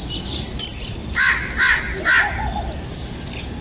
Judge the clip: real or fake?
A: real